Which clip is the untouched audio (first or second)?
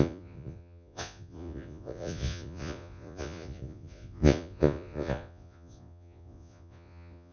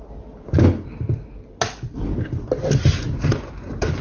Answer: second